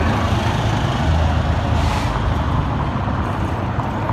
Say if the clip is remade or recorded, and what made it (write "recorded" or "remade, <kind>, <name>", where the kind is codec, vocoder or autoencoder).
recorded